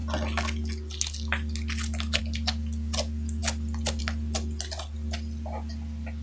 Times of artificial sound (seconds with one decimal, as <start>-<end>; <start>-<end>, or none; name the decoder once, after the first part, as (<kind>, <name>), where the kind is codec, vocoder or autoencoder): none